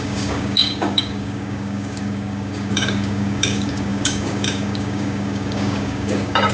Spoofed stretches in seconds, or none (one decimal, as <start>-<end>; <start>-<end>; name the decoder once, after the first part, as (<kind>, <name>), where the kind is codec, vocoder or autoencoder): 0.0-6.5 (codec, DAC)